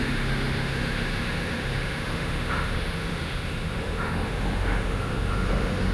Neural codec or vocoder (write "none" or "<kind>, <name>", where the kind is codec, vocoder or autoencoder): autoencoder, DAC-VAE